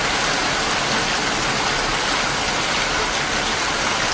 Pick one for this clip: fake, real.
real